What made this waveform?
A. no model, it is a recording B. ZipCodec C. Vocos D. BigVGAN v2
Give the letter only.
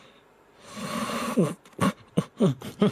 A